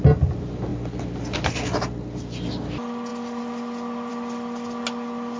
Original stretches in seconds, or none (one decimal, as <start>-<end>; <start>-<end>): 0.0-5.4